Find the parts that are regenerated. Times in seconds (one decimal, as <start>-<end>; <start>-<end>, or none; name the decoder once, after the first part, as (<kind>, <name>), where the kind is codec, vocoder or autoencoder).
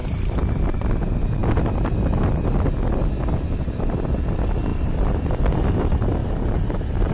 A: 0.0-0.9 (vocoder, BigVGAN v2); 6.2-7.1